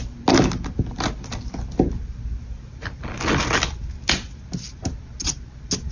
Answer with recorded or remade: recorded